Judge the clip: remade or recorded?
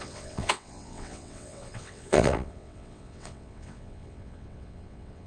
remade